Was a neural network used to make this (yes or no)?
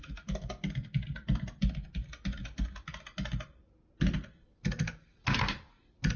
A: no